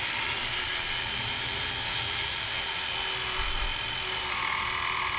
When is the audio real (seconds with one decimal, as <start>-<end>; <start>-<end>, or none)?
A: 0.0-5.2